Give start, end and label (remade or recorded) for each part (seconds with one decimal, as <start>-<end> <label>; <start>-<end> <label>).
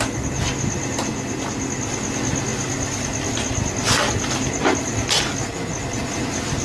0.0-6.6 recorded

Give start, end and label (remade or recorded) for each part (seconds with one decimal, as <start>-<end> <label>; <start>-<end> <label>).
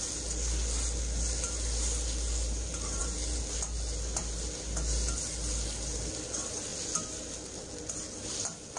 0.0-8.8 recorded